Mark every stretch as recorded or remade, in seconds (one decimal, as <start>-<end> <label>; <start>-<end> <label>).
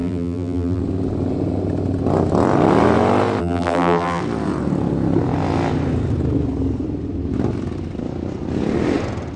0.0-0.8 remade; 0.8-3.4 recorded; 3.4-4.2 remade; 4.2-9.4 recorded